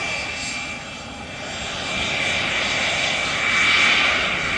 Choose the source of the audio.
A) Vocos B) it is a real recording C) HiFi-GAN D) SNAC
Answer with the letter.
B